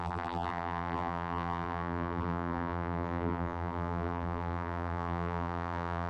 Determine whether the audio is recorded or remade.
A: remade